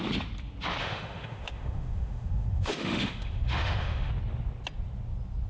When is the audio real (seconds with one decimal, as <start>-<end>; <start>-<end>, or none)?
0.0-0.8; 4.1-5.5